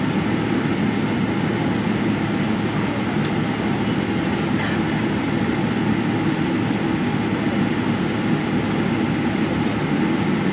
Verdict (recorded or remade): recorded